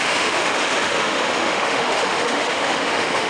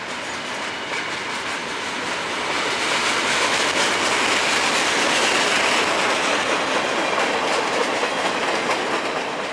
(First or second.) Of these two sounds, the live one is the second